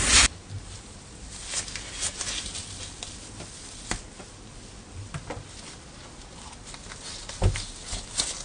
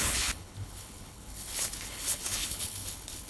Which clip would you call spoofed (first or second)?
second